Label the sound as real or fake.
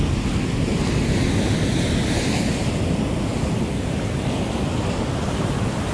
real